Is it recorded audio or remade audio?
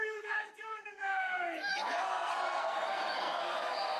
remade